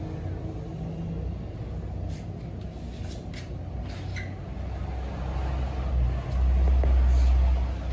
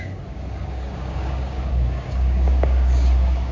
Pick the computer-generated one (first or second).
second